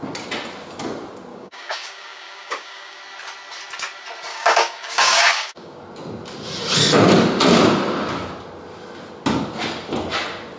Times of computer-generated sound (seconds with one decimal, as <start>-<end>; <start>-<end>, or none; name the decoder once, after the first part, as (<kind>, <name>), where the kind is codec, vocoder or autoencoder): 1.3-3.0 (codec, DAC); 4.3-5.8